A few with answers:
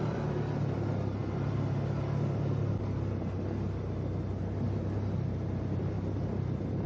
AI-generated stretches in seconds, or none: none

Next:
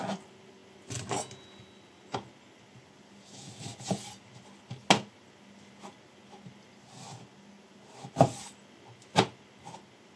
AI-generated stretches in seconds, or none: none

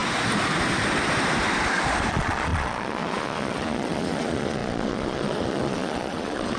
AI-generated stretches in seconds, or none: 2.1-6.6 (vocoder, Vocos)

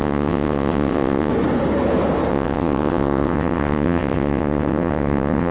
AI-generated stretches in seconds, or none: 0.0-1.3 (vocoder, WaveNeXt); 2.3-5.5